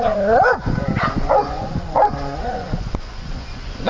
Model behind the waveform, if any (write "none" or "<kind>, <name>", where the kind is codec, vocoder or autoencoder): vocoder, Vocos